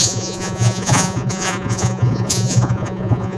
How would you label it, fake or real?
fake